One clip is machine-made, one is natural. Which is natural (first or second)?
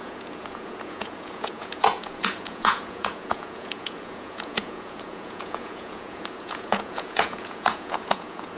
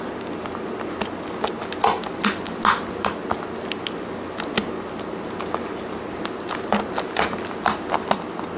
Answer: second